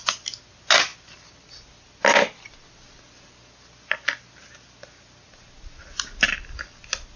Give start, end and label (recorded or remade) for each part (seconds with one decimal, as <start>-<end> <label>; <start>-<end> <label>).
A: 0.0-7.2 recorded